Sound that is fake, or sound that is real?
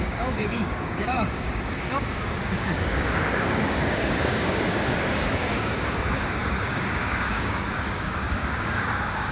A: fake